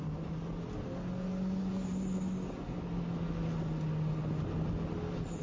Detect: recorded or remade recorded